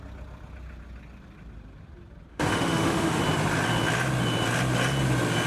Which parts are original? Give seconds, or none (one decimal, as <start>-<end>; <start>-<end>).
0.0-2.3; 3.2-5.5